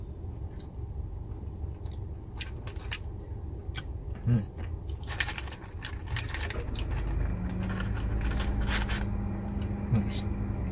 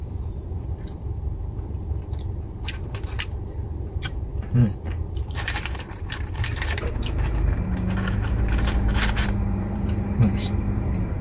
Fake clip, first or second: second